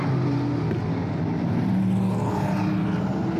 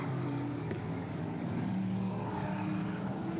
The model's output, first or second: second